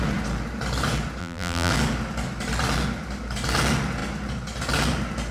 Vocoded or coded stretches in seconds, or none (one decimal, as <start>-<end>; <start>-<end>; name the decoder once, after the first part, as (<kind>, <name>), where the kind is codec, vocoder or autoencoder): 1.2-1.7 (vocoder, BigVGAN v2)